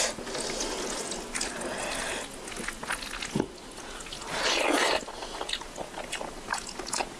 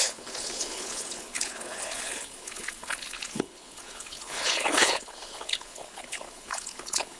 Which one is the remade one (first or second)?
second